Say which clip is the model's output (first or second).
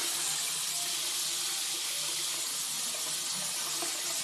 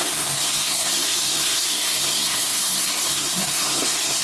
second